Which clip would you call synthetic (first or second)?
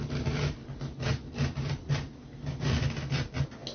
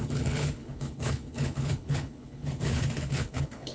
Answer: second